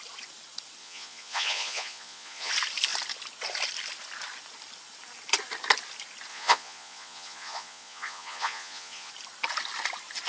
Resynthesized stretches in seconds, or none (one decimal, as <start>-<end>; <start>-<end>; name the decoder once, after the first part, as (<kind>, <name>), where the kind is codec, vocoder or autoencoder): 0.8-2.5 (vocoder, Vocos); 6.3-9.1